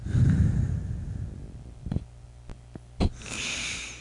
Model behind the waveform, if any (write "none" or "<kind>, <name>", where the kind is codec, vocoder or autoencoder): none